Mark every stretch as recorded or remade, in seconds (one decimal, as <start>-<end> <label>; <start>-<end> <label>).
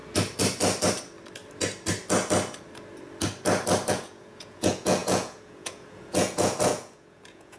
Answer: 0.0-3.9 recorded; 3.9-7.6 remade